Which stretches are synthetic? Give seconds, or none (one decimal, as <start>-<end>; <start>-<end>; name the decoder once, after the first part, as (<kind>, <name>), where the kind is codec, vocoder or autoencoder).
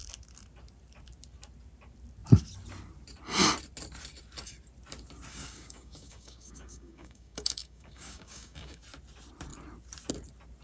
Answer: 5.3-8.8 (codec, DAC)